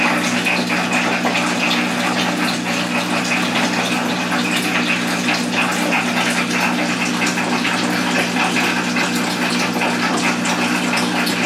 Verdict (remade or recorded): recorded